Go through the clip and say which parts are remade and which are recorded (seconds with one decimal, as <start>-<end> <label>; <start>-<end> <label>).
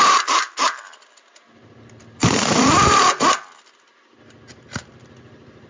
0.0-5.7 recorded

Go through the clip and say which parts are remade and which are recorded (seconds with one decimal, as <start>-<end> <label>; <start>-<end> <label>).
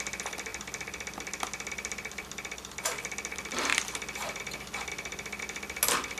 0.0-6.2 recorded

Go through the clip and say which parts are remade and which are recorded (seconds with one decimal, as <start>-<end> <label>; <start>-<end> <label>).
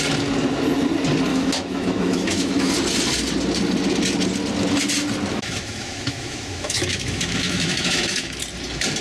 0.0-1.3 recorded; 1.3-2.7 remade; 2.7-5.3 recorded; 5.3-8.4 remade; 8.4-9.0 recorded